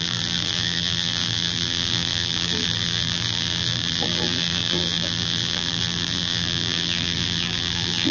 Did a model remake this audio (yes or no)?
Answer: yes